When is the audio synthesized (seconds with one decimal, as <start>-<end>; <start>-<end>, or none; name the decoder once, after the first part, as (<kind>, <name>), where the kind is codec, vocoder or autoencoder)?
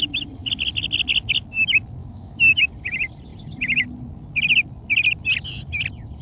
2.0-2.6 (autoencoder, DAC-VAE)